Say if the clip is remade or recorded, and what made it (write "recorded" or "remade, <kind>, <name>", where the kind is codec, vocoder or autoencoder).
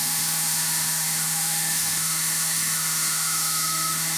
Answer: remade, autoencoder, DAC-VAE